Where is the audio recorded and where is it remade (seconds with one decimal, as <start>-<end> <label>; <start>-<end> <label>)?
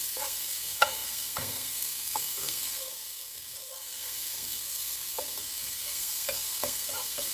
0.0-7.3 remade